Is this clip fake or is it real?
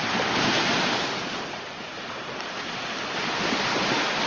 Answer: real